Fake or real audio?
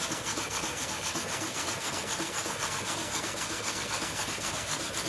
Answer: fake